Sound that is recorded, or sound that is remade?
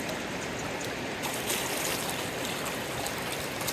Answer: recorded